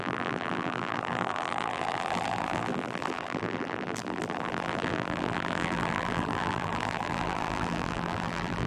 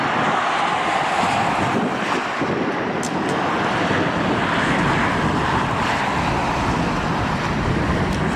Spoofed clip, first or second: first